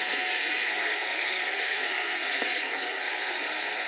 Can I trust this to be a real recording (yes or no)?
no